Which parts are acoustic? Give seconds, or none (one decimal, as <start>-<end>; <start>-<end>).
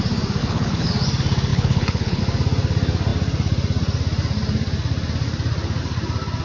0.0-0.4; 0.9-1.5; 2.2-6.4